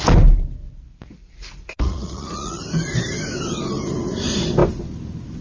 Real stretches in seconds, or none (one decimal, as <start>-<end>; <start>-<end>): 0.0-1.2; 2.6-5.4